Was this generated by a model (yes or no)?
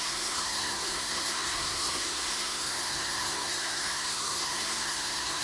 yes